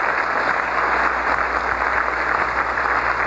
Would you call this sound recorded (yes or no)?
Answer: yes